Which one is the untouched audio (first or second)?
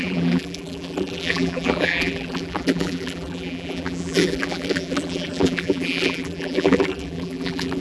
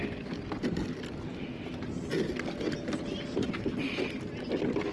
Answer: second